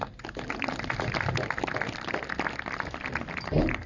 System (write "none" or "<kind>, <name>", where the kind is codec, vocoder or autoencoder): none